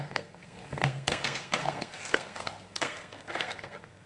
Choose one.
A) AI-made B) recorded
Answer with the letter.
A